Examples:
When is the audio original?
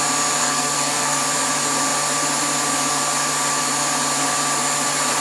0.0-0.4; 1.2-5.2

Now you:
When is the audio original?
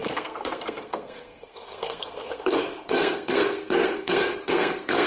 none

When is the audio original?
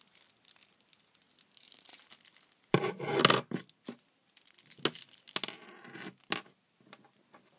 0.0-7.6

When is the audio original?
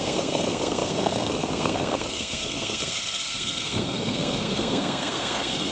none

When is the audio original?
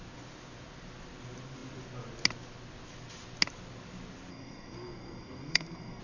0.0-4.3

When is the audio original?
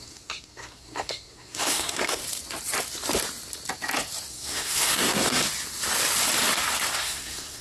2.2-4.3; 5.4-6.9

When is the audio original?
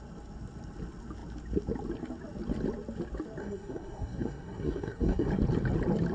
0.0-3.4; 5.3-6.1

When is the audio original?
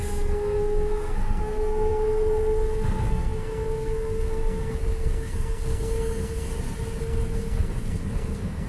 6.5-7.0